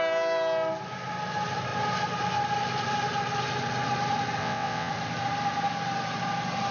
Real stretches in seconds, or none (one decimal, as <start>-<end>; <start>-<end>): 0.0-4.4; 4.9-6.7

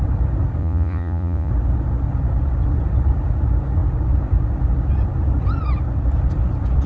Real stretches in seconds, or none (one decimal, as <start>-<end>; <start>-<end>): 0.0-0.6; 1.5-6.9

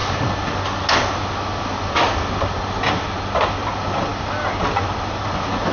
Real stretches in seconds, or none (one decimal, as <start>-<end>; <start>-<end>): 0.0-5.7

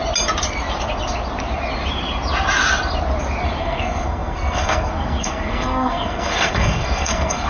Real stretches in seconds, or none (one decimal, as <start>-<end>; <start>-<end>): 0.0-3.6

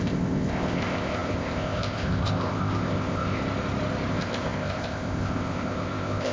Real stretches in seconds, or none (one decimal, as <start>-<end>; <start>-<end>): 3.4-4.1

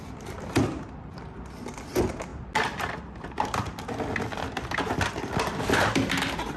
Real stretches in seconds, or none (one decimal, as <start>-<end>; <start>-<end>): 0.0-6.6

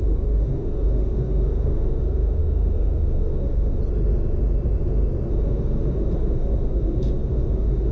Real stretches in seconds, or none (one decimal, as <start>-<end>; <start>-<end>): 3.8-5.3